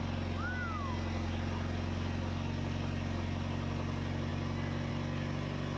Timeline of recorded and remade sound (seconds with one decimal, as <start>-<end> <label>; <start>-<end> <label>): 0.0-5.8 recorded